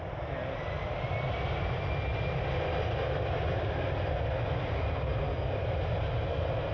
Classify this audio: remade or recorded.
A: recorded